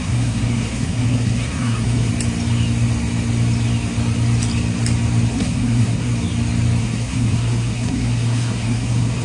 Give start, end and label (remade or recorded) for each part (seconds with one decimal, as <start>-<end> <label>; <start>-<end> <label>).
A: 0.0-2.1 remade; 2.1-5.3 recorded; 5.3-6.1 remade; 6.1-6.8 recorded; 6.8-9.2 remade